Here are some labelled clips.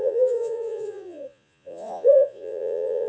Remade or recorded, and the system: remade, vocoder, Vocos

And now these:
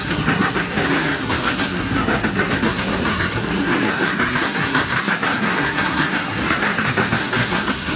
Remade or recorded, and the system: remade, codec, SNAC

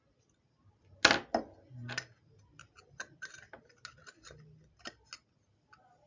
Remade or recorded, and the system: recorded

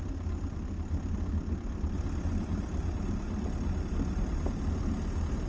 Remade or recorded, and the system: recorded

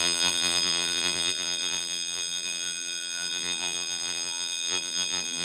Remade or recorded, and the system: remade, vocoder, BigVGAN v2